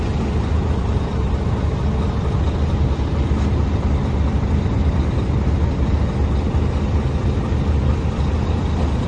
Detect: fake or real real